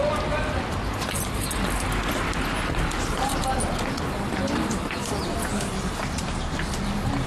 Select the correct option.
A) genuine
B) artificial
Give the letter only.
A